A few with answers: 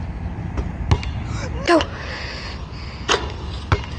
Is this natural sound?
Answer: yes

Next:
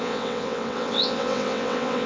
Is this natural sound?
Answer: no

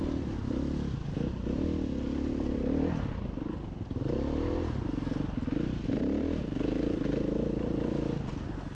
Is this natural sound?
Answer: yes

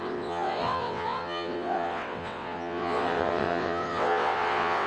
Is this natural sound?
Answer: no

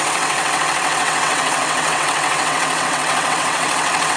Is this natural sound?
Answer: no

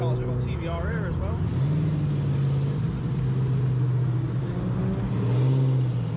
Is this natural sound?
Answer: yes